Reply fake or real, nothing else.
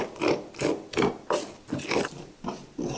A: real